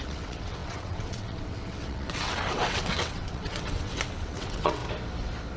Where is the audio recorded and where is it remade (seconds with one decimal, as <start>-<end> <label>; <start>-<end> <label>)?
0.0-4.8 remade; 4.8-5.6 recorded